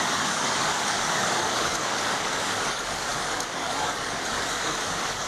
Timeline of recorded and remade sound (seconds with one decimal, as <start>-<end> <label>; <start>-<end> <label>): 0.0-5.3 remade